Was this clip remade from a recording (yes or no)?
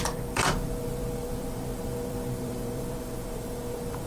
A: yes